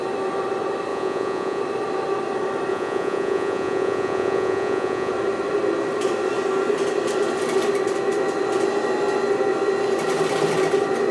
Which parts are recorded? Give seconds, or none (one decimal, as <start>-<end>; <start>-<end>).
0.0-0.9; 1.6-2.7; 5.1-11.1